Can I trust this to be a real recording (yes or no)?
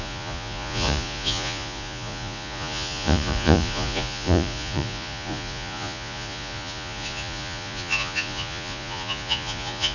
no